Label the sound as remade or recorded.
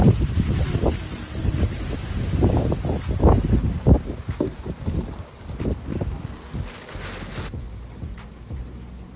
recorded